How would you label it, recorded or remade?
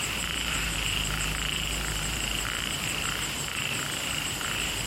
remade